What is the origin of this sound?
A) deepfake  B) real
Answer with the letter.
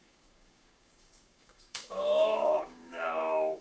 A